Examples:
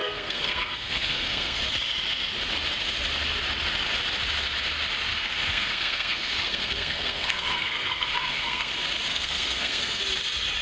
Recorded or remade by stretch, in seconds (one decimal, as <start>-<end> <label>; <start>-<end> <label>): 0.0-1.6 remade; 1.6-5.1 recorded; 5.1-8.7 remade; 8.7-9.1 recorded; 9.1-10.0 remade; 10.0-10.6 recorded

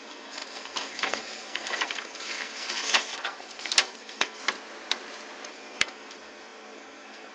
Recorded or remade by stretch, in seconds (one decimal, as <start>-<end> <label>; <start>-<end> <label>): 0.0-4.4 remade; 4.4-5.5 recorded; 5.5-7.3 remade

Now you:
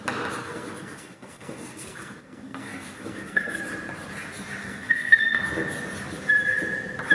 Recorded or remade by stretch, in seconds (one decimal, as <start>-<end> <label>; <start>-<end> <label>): 0.0-0.4 recorded; 0.4-3.6 remade; 3.6-4.6 recorded; 4.6-5.4 remade; 5.4-7.1 recorded

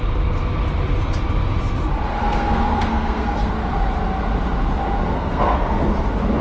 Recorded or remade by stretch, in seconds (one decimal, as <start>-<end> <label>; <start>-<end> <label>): 0.0-2.1 recorded; 2.1-3.5 remade; 3.5-5.0 recorded; 5.0-5.8 remade; 5.8-6.4 recorded